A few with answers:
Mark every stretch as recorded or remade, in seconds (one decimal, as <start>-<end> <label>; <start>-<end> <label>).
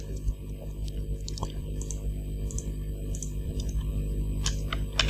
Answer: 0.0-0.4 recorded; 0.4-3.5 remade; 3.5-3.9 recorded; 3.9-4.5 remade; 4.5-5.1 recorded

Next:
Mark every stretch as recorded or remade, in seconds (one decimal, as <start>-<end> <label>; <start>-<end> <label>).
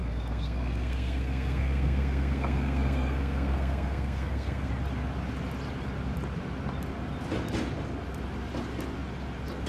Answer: 0.0-4.7 remade; 4.7-9.7 recorded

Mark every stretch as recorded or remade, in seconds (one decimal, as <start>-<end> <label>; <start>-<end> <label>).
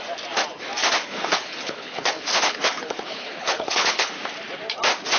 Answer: 0.0-1.0 recorded; 1.0-4.1 remade; 4.1-5.2 recorded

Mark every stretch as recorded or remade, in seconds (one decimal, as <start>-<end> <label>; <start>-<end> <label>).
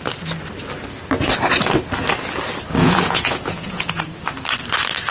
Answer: 0.0-2.8 recorded; 2.8-4.0 remade; 4.0-5.1 recorded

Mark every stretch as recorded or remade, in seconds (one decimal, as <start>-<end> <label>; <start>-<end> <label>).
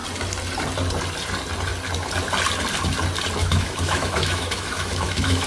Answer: 0.0-3.4 recorded; 3.4-5.5 remade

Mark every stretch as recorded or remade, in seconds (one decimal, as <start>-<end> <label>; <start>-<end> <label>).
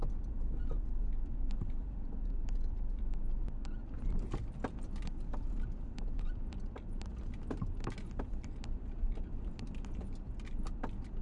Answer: 0.0-7.1 remade; 7.1-8.1 recorded; 8.1-11.2 remade